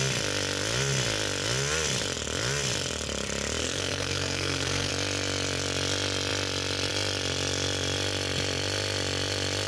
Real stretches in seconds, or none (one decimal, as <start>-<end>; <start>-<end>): 0.0-3.6; 4.9-9.7